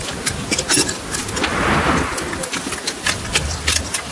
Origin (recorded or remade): recorded